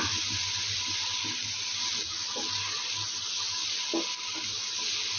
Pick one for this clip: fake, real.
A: real